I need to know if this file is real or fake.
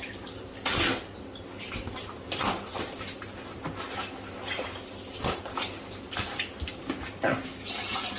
real